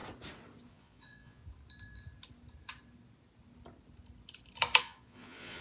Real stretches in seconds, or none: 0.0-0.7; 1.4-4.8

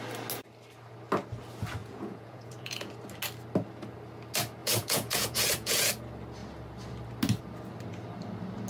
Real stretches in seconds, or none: 0.0-1.8; 2.9-4.6; 5.9-8.7

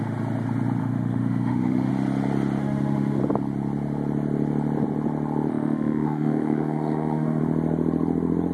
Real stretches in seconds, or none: 0.0-0.8; 1.9-2.6; 3.2-5.5; 7.4-8.5